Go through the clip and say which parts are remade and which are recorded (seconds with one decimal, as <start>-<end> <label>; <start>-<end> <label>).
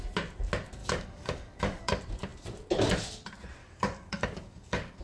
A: 0.0-0.8 recorded; 0.8-1.9 remade; 1.9-3.6 recorded; 3.6-5.0 remade